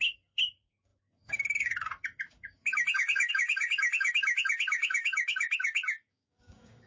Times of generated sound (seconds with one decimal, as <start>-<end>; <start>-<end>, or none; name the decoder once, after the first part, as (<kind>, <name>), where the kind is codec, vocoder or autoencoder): 0.0-6.9 (codec, DAC)